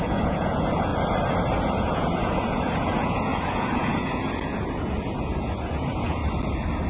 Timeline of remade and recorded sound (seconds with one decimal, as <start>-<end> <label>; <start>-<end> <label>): 0.0-0.9 remade; 0.9-1.6 recorded; 1.6-6.2 remade; 6.2-6.9 recorded